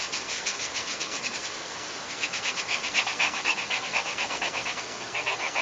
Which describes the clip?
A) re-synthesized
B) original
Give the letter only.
A